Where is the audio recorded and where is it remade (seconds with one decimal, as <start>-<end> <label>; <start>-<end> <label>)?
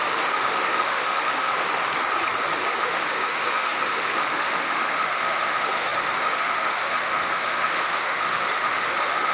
0.0-1.9 remade; 1.9-2.8 recorded; 2.8-9.3 remade